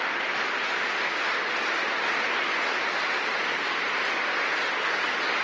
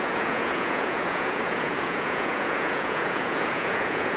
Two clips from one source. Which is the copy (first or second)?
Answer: second